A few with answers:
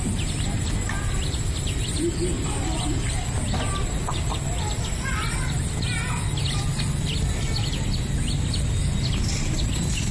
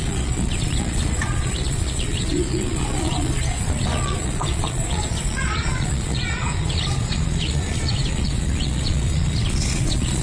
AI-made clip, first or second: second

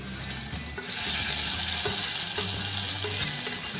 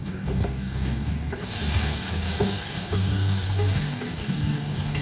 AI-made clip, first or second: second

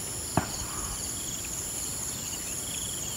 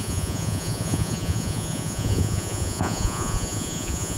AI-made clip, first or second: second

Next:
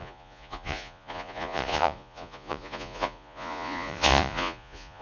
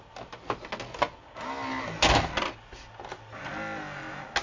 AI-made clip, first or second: first